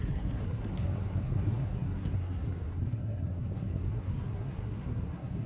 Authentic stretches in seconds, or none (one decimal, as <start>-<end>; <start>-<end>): none